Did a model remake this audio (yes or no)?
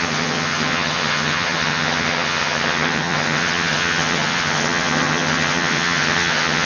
yes